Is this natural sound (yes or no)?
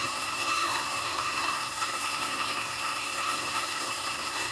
no